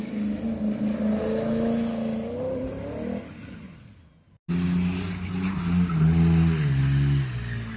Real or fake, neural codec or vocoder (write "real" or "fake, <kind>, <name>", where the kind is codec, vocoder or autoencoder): real